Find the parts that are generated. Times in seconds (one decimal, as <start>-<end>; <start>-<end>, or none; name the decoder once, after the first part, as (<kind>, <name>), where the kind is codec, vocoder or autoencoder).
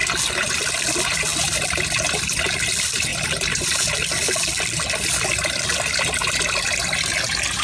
none